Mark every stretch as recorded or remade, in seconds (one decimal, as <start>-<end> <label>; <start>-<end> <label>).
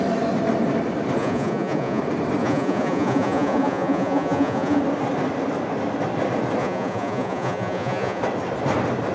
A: 0.0-1.2 recorded; 1.2-2.0 remade; 2.0-2.4 recorded; 2.4-4.8 remade; 4.8-6.6 recorded; 6.6-8.2 remade; 8.2-9.1 recorded